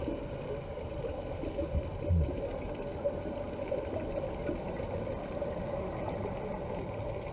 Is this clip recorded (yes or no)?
yes